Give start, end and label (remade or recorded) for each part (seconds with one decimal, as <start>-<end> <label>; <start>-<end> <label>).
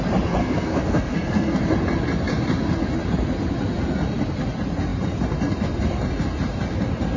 0.0-0.4 recorded; 0.4-1.6 remade; 1.6-7.2 recorded